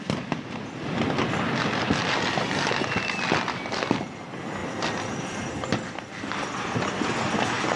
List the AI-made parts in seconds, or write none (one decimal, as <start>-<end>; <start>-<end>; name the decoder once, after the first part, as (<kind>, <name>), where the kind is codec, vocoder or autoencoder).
none